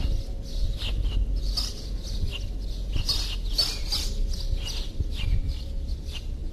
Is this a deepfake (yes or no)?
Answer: no